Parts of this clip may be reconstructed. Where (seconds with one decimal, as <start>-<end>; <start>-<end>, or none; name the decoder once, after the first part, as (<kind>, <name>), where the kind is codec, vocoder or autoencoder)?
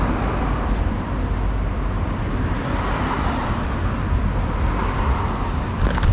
none